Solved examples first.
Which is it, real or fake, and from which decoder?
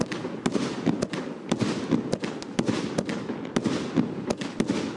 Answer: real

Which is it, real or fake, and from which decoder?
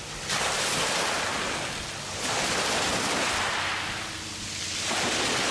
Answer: real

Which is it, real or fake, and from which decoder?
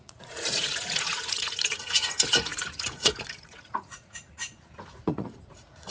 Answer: fake, vocoder, Vocos